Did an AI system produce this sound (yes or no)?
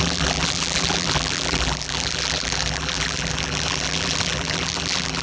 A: yes